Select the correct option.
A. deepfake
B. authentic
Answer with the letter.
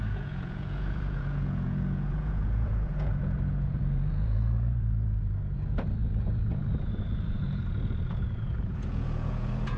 A